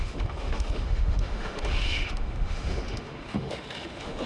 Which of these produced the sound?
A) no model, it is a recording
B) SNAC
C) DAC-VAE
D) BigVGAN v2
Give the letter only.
C